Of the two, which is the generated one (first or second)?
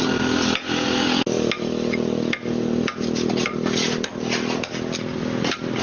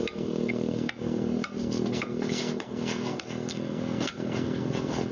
second